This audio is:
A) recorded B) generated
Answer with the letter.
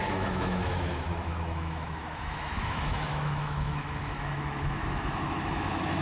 B